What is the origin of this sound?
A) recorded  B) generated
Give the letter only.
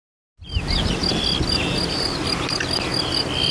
A